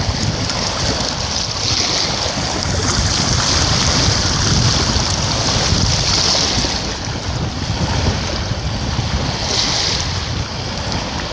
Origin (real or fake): real